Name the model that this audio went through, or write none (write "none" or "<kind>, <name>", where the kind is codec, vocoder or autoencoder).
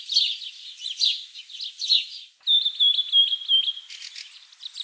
none